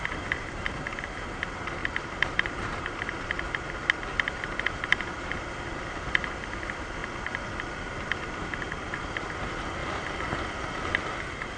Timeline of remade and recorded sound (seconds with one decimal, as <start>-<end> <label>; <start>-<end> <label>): 0.0-1.8 recorded; 1.8-3.2 remade; 3.2-4.1 recorded; 4.1-5.0 remade; 5.0-9.8 recorded; 9.8-10.4 remade; 10.4-11.6 recorded

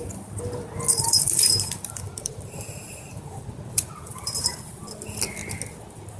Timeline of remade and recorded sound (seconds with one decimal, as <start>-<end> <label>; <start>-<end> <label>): 0.0-0.9 recorded; 0.9-4.6 remade; 4.6-6.2 recorded

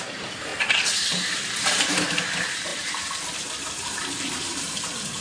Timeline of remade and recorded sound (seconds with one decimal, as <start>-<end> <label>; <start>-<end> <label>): 0.0-0.5 remade; 0.5-1.3 recorded; 1.3-5.2 remade